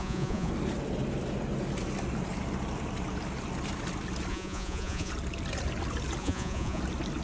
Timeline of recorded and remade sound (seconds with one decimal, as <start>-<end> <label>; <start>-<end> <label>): 0.0-0.5 remade; 0.5-4.3 recorded; 4.3-5.1 remade; 5.1-6.2 recorded; 6.2-6.8 remade; 6.8-7.2 recorded